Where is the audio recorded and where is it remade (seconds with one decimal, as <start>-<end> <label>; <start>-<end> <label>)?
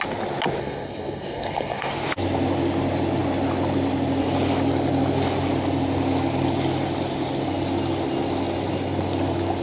0.0-0.6 recorded; 0.6-1.9 remade; 1.9-9.6 recorded